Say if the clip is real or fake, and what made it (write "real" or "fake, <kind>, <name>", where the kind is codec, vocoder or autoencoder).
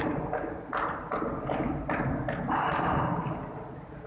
real